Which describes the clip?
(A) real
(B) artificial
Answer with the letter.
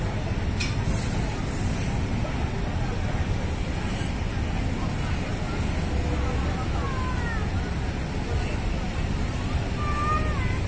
A